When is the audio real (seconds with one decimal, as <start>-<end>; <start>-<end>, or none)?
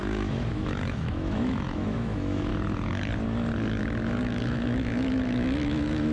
2.5-3.8